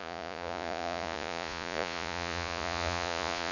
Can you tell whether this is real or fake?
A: fake